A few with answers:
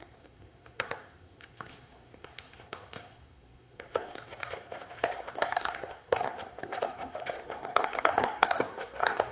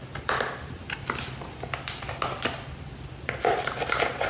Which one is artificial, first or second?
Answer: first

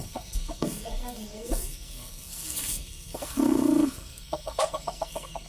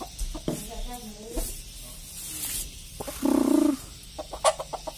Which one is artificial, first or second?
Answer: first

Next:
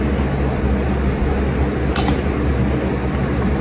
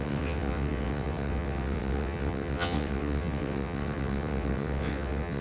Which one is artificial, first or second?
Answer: second